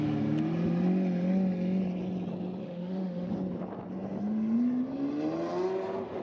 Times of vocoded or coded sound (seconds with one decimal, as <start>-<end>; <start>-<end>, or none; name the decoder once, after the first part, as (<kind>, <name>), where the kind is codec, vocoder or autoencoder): 2.6-3.3 (autoencoder, DAC-VAE)